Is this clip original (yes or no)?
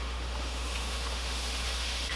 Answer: no